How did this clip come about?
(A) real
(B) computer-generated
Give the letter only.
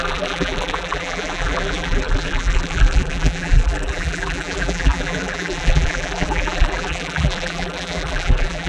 B